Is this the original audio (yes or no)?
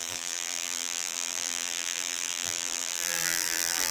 no